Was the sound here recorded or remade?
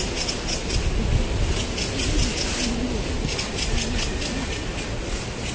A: recorded